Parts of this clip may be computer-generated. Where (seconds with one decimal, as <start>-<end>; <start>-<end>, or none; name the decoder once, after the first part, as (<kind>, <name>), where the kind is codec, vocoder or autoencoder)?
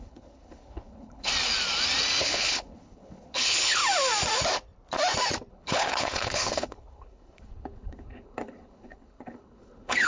0.0-1.3 (codec, HILCodec); 2.2-3.8; 5.5-10.1